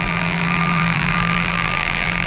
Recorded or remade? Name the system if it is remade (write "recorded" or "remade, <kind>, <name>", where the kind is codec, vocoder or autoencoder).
remade, vocoder, BigVGAN v2